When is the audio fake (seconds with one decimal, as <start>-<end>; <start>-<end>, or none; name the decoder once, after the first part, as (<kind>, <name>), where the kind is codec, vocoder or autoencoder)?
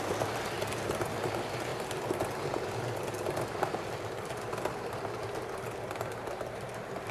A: none